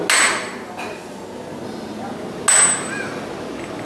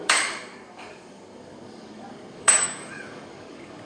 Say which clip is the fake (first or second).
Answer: second